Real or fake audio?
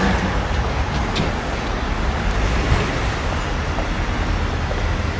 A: real